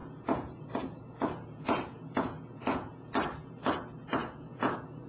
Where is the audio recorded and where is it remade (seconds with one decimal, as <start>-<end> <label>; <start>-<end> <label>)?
0.0-3.1 remade; 3.1-4.2 recorded; 4.2-5.1 remade